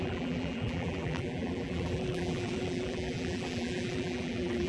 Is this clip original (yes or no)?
no